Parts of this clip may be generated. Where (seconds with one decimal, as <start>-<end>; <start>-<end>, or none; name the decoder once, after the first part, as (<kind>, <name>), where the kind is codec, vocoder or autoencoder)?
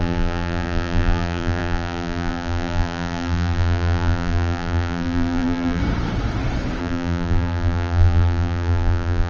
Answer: 0.0-5.8 (vocoder, BigVGAN v2); 6.8-9.3